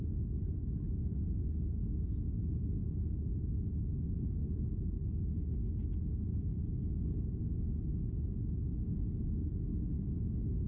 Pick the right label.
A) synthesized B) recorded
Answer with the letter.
B